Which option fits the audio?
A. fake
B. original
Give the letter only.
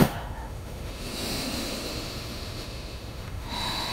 A